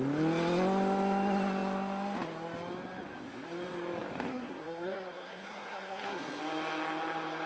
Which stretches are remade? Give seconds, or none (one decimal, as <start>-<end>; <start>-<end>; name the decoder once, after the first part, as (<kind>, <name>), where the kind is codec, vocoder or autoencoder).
4.3-6.4 (codec, SNAC)

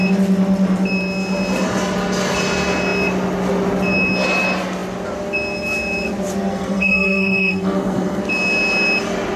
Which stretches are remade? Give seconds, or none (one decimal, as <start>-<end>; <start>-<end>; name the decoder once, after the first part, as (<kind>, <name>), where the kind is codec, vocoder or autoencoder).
6.5-8.2 (codec, SNAC)

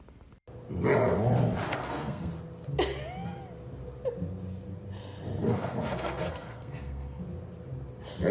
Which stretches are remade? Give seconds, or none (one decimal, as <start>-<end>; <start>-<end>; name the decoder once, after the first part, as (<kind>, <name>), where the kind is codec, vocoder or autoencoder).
1.8-2.3 (codec, SNAC); 5.4-7.2

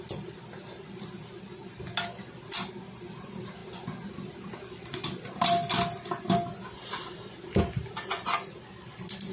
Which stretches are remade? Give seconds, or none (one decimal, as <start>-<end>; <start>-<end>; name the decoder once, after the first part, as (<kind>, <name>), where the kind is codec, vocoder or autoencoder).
none

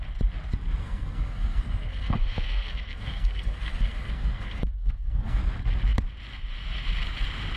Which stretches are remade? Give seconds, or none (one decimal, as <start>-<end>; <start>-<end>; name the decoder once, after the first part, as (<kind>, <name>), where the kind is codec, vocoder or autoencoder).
0.8-5.4 (codec, SNAC)

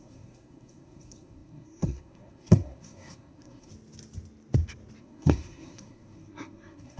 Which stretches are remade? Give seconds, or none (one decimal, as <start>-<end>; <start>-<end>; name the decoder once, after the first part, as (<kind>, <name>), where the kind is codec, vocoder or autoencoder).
0.0-3.7 (codec, SNAC); 5.0-7.0

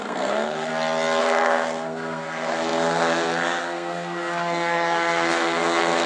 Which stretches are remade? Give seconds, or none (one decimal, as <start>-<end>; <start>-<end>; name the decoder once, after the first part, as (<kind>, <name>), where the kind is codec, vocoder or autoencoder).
0.0-0.7 (codec, SNAC); 1.2-6.1

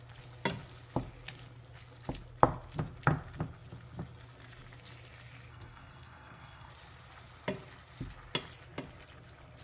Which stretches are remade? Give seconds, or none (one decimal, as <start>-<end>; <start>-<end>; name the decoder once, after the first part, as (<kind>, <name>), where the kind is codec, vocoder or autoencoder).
5.5-6.7 (codec, SNAC)